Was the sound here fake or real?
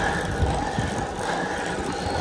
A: real